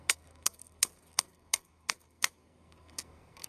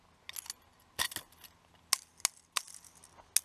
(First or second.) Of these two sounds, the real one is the second